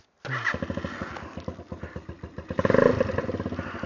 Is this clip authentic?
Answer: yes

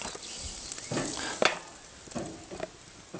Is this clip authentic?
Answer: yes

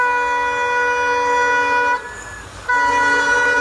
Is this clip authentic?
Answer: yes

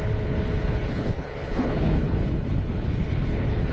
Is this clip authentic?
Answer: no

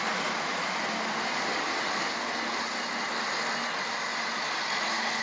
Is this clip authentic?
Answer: yes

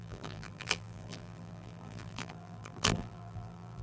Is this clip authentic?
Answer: no